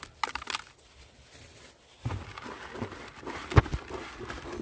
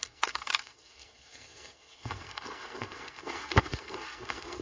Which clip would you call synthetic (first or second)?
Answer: second